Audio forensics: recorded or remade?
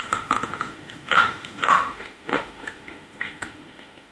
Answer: remade